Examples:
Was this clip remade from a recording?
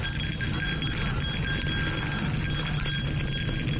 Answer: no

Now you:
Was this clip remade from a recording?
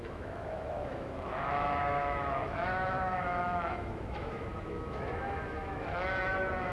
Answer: yes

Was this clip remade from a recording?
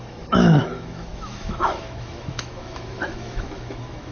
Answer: yes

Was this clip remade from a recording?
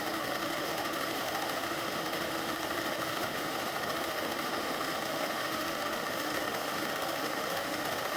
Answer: yes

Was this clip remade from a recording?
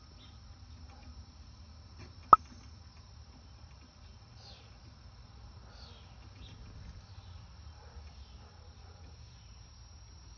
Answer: no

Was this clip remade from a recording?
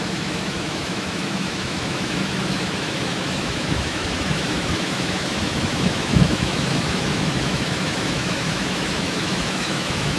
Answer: yes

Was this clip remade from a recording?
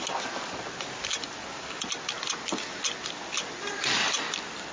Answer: no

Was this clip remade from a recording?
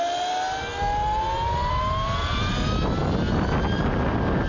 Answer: no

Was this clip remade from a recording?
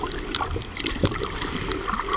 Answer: no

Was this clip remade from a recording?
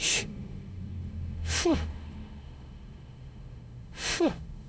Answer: yes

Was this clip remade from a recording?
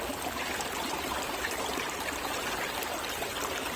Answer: no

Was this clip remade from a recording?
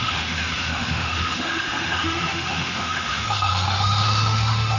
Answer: yes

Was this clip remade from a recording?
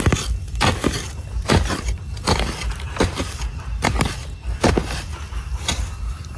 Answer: no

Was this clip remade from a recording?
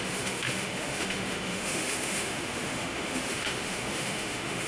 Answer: yes